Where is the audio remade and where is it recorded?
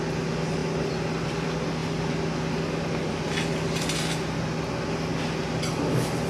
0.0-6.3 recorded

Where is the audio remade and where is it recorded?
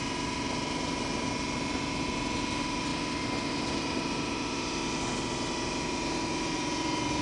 0.0-7.2 recorded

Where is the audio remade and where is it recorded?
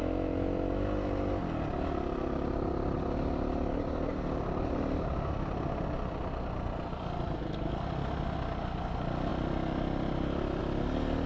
0.0-11.3 recorded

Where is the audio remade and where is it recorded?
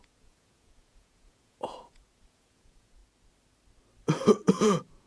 0.0-3.0 remade; 3.0-4.5 recorded; 4.5-5.1 remade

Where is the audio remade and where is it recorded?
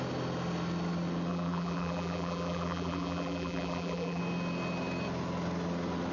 0.0-1.3 recorded; 1.3-4.2 remade; 4.2-6.1 recorded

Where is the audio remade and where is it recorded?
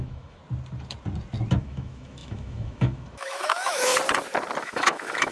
0.0-0.4 remade; 0.4-1.6 recorded; 1.6-3.9 remade; 3.9-4.6 recorded; 4.6-5.3 remade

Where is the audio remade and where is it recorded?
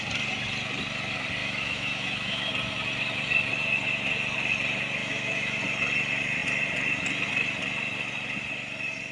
0.0-1.4 recorded; 1.4-2.5 remade; 2.5-5.0 recorded; 5.0-5.6 remade; 5.6-9.1 recorded